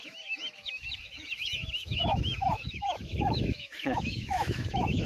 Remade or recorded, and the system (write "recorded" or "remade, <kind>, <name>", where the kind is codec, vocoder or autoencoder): remade, autoencoder, DAC-VAE